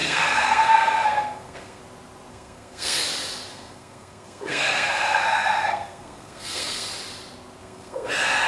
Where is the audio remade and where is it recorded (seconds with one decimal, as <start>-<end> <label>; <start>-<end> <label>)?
0.0-1.8 remade; 1.8-2.3 recorded; 2.3-3.0 remade; 3.0-3.5 recorded; 3.5-6.9 remade; 6.9-7.6 recorded; 7.6-8.1 remade; 8.1-8.5 recorded